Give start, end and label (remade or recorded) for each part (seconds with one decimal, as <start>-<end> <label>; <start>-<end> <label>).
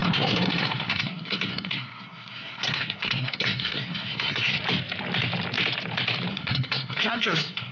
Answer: 0.0-4.6 remade; 4.6-6.3 recorded; 6.3-7.7 remade